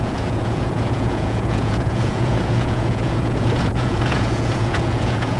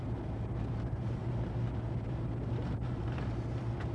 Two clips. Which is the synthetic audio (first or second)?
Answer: first